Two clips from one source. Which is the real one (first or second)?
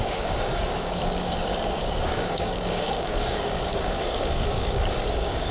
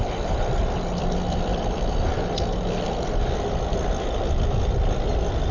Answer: second